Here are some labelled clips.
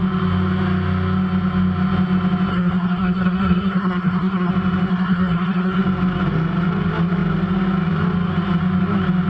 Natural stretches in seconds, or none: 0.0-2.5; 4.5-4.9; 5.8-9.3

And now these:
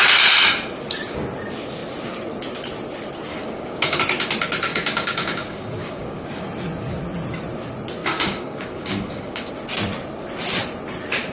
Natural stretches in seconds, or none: 0.0-3.3; 4.0-4.7; 6.4-8.0; 9.5-11.3

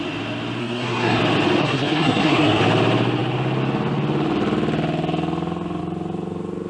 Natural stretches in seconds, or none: 0.0-0.6; 1.2-1.6; 2.6-6.7